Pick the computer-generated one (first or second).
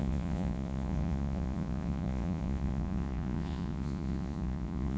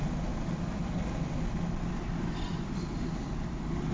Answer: first